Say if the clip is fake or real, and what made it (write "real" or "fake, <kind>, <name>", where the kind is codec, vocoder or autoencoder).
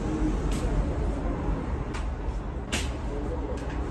real